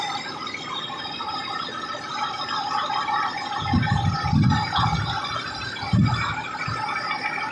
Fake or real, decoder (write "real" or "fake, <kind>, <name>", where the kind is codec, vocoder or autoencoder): real